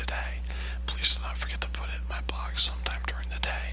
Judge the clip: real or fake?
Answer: real